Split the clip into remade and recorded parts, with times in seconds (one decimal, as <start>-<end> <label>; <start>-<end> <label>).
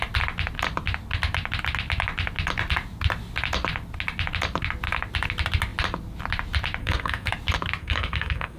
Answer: 0.0-6.8 recorded; 6.8-7.3 remade; 7.3-7.8 recorded; 7.8-8.6 remade